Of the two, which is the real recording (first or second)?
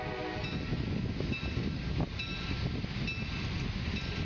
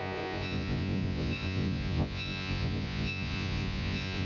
first